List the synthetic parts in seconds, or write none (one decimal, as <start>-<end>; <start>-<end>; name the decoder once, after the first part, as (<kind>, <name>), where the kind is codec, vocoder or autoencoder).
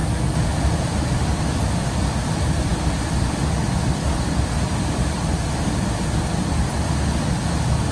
none